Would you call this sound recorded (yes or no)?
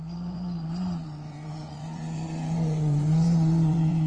no